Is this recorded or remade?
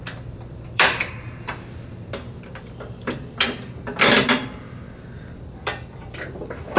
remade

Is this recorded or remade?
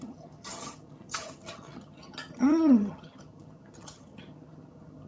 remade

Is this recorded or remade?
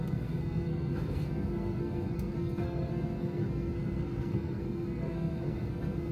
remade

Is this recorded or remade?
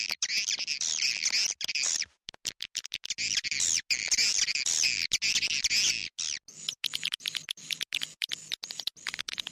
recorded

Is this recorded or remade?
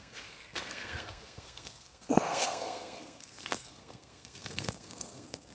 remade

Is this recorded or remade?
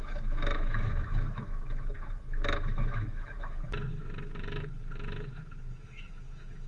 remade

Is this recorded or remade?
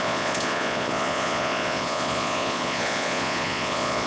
remade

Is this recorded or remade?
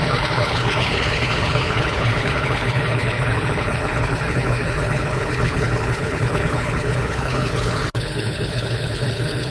remade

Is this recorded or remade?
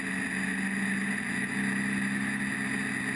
recorded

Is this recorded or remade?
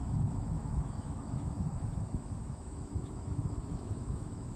remade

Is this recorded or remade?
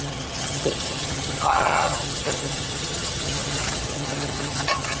remade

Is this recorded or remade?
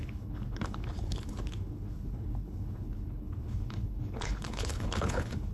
remade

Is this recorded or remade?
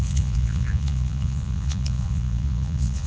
remade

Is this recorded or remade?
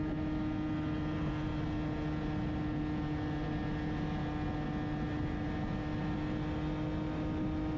recorded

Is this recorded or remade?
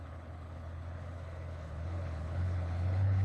remade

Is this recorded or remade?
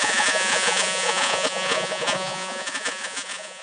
remade